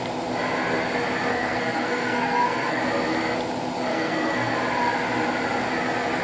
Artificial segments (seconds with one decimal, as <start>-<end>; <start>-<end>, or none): 1.3-2.8; 3.9-4.5